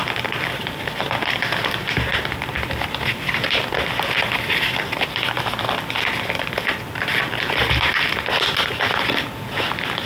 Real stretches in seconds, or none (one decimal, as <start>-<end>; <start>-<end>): 1.0-2.1; 7.1-10.1